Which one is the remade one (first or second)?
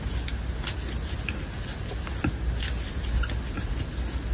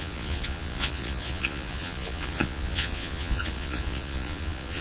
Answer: second